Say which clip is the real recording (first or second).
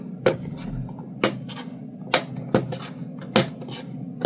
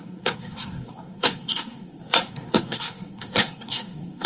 first